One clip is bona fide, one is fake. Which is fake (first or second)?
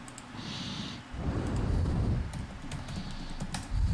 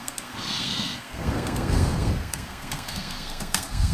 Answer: second